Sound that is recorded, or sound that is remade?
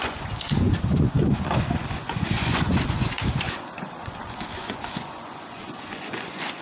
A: remade